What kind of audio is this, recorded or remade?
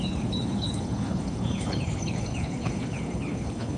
remade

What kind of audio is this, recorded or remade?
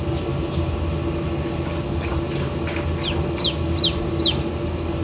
recorded